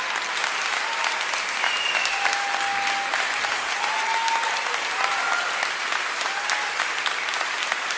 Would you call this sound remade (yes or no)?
no